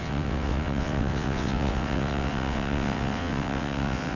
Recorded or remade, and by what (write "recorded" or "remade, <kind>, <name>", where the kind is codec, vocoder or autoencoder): remade, vocoder, WaveNeXt